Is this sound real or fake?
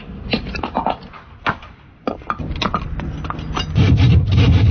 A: real